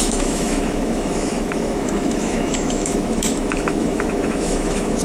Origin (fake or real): fake